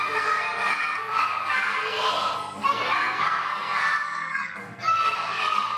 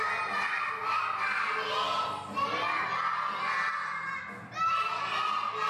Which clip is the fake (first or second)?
first